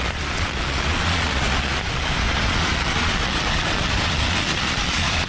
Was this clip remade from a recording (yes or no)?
yes